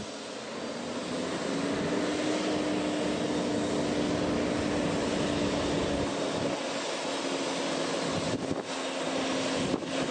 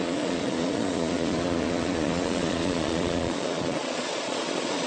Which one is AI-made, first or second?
second